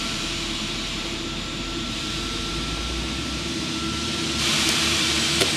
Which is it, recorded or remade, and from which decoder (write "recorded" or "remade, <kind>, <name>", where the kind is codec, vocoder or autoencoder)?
remade, vocoder, BigVGAN v2